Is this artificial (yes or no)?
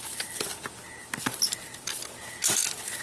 no